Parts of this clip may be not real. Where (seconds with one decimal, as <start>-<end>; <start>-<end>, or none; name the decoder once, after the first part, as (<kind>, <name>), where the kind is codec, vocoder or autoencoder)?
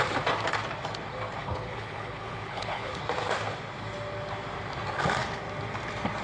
1.4-3.0 (codec, HILCodec)